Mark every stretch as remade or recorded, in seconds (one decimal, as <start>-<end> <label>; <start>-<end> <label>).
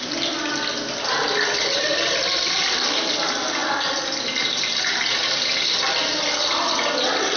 0.0-7.4 recorded